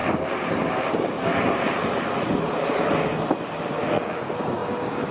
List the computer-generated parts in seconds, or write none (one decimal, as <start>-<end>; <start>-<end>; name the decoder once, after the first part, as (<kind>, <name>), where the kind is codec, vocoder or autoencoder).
0.9-1.3 (codec, DAC); 3.9-5.1